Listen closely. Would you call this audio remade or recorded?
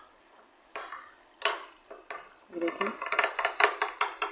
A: recorded